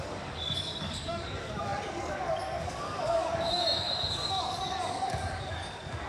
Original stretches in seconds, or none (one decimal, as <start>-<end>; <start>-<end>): none